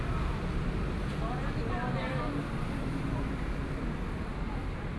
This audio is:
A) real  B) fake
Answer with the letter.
A